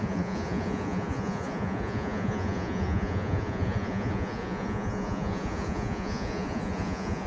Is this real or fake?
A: fake